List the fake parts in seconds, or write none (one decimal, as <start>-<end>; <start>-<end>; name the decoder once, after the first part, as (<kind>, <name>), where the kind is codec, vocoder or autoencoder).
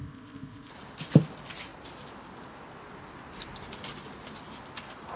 0.0-0.7 (codec, ZipCodec)